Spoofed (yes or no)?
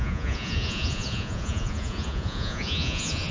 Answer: yes